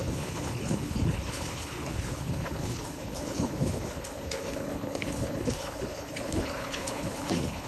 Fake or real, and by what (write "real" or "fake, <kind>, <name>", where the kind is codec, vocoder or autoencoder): fake, codec, HILCodec